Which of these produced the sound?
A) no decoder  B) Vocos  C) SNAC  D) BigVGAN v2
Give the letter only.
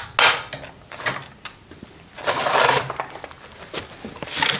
A